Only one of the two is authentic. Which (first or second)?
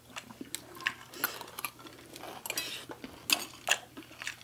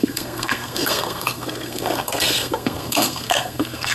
first